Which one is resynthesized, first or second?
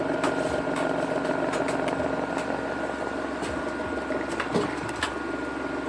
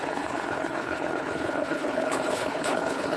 second